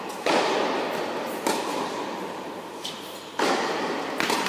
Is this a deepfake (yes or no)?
no